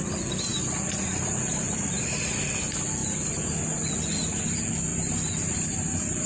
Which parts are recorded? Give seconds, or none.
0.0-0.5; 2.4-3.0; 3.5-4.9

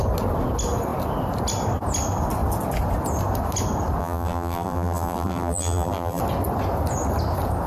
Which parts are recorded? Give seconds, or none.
0.0-4.0; 6.2-7.7

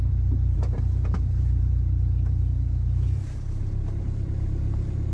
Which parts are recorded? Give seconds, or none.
2.5-4.0

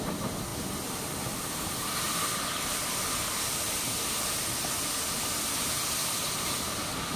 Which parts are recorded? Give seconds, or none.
0.0-7.2